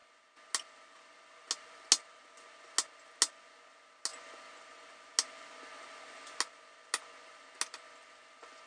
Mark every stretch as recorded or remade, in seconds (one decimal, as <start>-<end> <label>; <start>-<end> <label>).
0.0-8.7 recorded